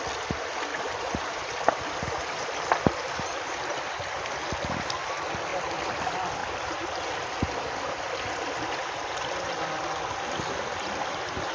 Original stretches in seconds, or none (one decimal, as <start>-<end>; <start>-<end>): 0.0-0.7; 2.6-6.4; 7.0-11.5